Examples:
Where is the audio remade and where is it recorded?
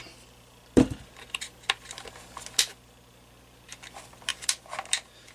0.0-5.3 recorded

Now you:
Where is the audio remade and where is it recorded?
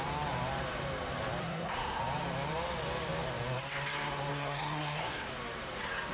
0.0-1.4 recorded; 1.4-2.0 remade; 2.0-4.3 recorded; 4.3-5.3 remade; 5.3-6.1 recorded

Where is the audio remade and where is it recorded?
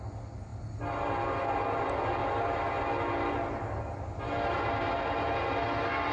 0.0-6.1 recorded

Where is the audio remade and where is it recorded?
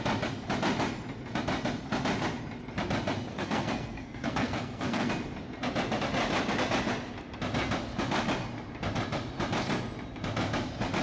0.0-3.3 recorded; 3.3-5.1 remade; 5.1-11.0 recorded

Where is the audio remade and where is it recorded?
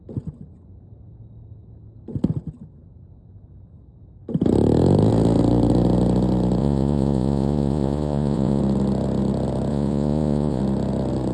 0.0-6.6 recorded; 6.6-8.6 remade; 8.6-9.7 recorded; 9.7-10.6 remade; 10.6-11.3 recorded